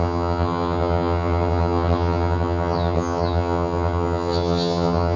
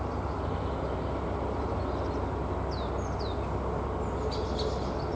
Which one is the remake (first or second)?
first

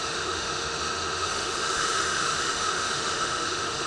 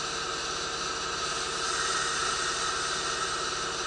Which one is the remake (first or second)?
first